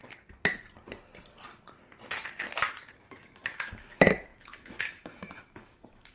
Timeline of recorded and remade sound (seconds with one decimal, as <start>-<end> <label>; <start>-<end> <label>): 0.0-3.1 recorded; 3.1-6.1 remade